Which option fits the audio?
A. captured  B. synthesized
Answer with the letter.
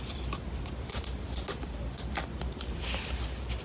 A